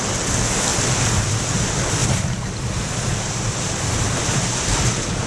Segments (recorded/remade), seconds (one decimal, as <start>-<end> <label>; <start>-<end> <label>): 0.0-0.7 recorded; 0.7-1.3 remade; 1.3-2.0 recorded; 2.0-4.2 remade; 4.2-5.3 recorded